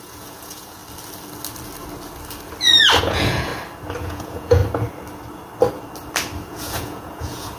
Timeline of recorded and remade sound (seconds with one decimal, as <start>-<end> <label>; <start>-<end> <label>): 0.0-0.8 remade; 0.8-3.0 recorded; 3.0-3.5 remade; 3.5-4.0 recorded; 4.0-4.6 remade; 4.6-6.5 recorded; 6.5-7.6 remade